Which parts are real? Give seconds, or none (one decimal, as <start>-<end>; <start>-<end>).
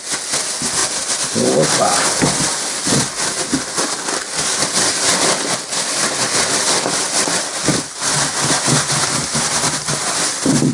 0.0-10.7